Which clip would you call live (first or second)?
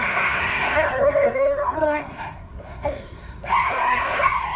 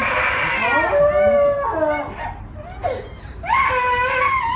second